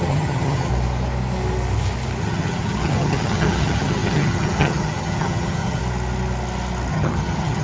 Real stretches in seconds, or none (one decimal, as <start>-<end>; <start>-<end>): 0.7-2.2; 5.8-6.9